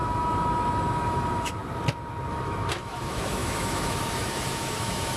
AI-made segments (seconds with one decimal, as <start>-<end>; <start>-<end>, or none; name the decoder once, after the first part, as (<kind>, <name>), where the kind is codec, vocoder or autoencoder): 0.0-1.6 (autoencoder, DAC-VAE); 2.3-5.2